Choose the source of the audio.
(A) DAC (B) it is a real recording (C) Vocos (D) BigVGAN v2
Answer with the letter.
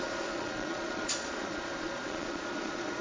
C